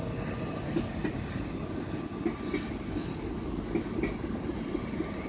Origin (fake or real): real